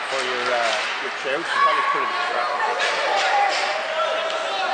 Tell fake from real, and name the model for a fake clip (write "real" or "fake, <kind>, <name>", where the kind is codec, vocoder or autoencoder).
real